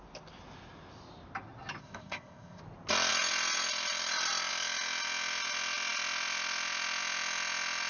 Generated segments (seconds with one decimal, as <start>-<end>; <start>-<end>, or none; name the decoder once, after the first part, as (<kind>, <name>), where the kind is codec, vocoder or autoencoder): 1.8-2.6 (codec, ZipCodec)